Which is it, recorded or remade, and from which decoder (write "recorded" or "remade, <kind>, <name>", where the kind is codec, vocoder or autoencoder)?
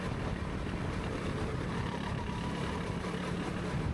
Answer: recorded